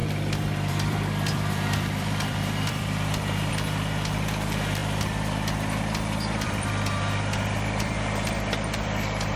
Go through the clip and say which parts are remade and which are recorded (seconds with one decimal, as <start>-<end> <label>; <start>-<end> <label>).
0.0-3.5 remade; 3.5-4.8 recorded; 4.8-6.7 remade; 6.7-9.4 recorded